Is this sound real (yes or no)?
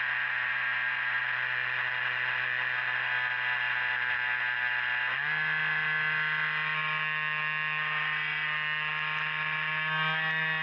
yes